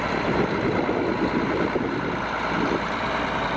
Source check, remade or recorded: remade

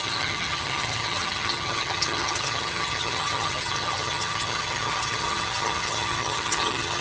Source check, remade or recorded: remade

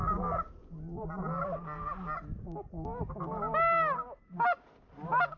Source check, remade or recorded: recorded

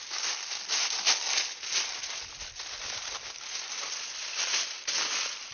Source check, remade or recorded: recorded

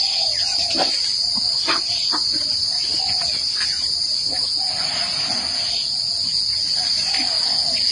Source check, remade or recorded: recorded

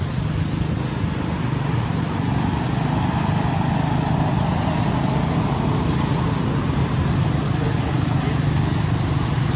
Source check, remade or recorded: recorded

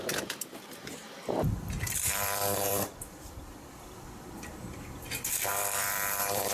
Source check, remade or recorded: remade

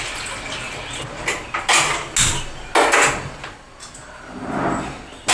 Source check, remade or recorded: recorded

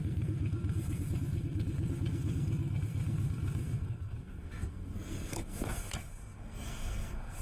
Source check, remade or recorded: remade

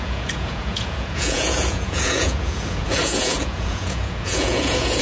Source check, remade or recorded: remade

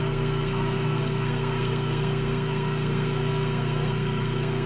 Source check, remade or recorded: remade